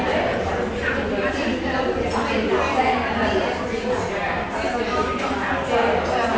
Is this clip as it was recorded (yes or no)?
yes